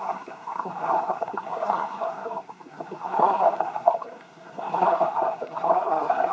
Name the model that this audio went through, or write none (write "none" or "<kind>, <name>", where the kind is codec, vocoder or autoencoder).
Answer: codec, SNAC